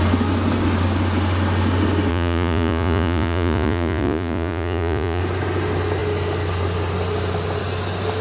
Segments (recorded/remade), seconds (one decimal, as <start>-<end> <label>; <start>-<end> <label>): 0.0-2.1 recorded; 2.1-5.2 remade; 5.2-8.2 recorded